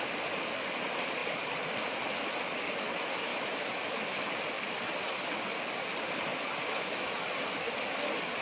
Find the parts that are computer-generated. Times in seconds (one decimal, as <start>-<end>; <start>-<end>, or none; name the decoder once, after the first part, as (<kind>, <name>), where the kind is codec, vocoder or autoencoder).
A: 3.3-4.2 (autoencoder, DAC-VAE); 6.6-7.2